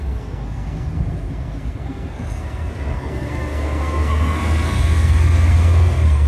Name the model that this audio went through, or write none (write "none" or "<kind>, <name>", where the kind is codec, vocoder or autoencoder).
codec, SNAC